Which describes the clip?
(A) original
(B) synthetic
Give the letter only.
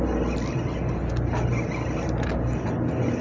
A